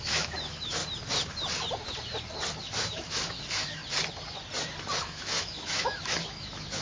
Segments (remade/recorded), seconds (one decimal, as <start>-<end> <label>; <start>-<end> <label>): 0.0-0.8 remade; 0.8-2.6 recorded; 2.6-3.8 remade; 3.8-5.0 recorded; 5.0-6.8 remade